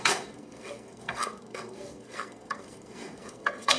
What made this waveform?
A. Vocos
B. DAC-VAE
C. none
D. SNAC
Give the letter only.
D